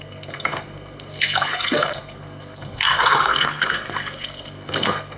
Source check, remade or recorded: remade